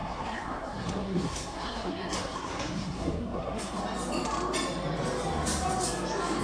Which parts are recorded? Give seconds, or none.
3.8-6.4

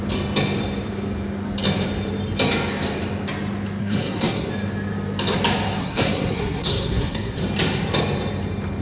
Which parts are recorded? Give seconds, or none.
0.0-3.8; 4.5-5.8; 7.4-8.8

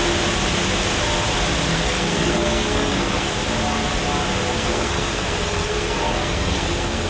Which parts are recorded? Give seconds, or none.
0.0-1.7; 3.3-4.5

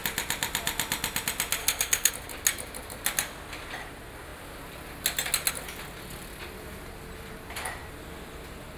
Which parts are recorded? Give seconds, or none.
0.0-1.6; 2.1-8.8

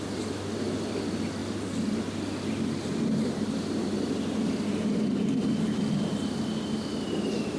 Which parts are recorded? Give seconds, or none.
0.0-7.6

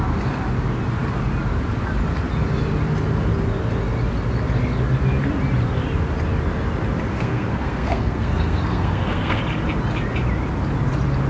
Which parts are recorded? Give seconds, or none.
0.0-7.1; 9.4-11.3

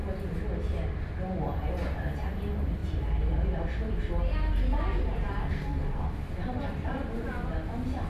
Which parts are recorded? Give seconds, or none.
0.0-5.4; 6.0-8.1

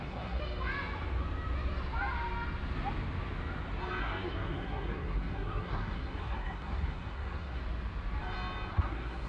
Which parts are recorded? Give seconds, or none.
0.4-4.0; 7.6-8.7